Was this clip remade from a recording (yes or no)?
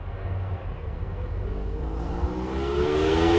yes